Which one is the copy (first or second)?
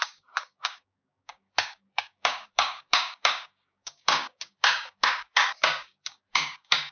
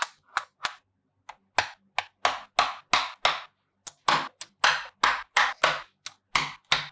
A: first